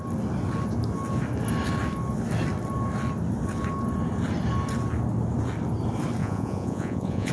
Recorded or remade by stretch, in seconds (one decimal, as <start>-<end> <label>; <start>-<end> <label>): 0.0-6.2 recorded; 6.2-7.3 remade